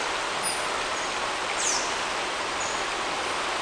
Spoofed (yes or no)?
no